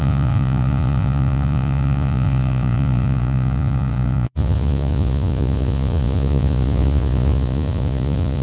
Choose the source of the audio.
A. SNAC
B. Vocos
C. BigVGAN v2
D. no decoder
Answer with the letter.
B